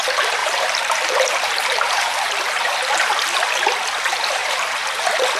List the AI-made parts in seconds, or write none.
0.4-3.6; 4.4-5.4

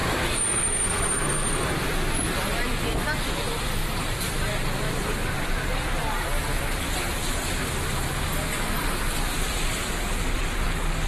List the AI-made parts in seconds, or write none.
0.0-1.9; 3.8-5.9